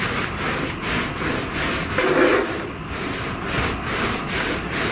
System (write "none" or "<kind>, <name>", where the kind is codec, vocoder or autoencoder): none